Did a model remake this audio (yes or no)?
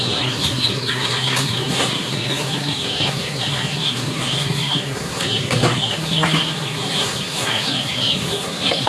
yes